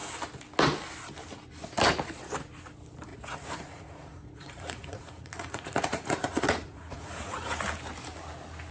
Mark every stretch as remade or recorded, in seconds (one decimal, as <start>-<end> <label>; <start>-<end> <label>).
0.0-3.1 recorded; 3.1-7.6 remade; 7.6-8.7 recorded